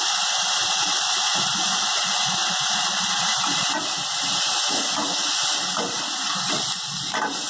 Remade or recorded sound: recorded